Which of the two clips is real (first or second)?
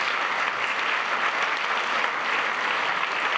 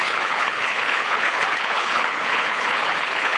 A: first